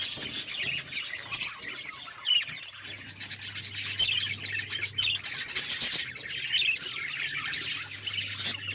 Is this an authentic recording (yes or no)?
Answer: yes